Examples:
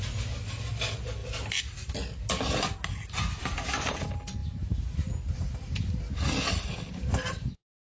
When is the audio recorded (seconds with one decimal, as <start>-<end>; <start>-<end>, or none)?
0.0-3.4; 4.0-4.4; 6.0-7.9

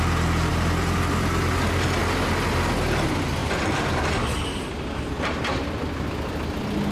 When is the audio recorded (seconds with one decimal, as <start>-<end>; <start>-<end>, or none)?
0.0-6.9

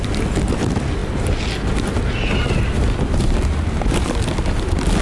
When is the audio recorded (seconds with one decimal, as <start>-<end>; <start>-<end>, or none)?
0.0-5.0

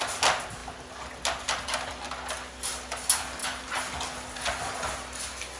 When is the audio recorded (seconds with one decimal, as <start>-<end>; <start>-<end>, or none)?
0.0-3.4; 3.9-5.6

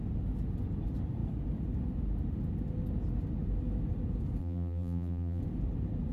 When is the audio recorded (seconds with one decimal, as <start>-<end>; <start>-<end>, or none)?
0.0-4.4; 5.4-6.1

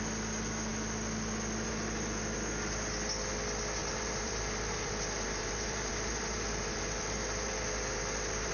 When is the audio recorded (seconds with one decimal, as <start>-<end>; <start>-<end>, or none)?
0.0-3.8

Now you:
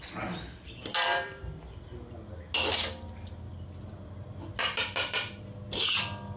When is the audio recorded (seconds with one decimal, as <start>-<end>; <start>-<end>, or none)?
0.0-0.9; 1.4-6.4

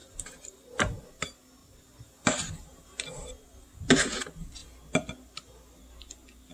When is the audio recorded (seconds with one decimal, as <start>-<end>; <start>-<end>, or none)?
0.0-1.6; 3.3-6.5